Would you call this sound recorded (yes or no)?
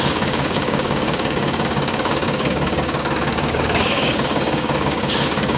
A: no